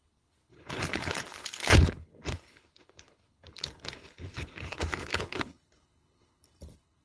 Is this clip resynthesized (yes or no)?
yes